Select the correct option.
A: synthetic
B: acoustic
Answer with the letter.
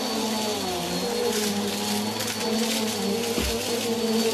B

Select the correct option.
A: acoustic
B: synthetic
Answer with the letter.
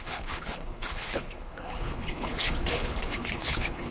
B